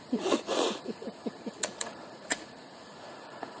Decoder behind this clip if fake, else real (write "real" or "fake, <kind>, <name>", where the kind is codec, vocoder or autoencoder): fake, vocoder, Vocos